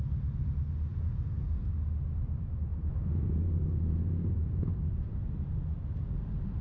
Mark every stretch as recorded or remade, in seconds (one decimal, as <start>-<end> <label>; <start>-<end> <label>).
0.0-0.9 recorded; 0.9-1.7 remade; 1.7-2.7 recorded; 2.7-5.2 remade; 5.2-6.6 recorded